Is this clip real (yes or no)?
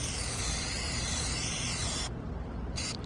yes